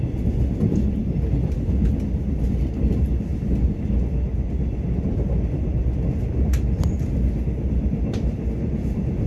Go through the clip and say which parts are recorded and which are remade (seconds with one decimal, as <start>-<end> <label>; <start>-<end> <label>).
0.0-9.3 recorded